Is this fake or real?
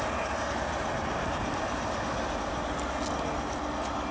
real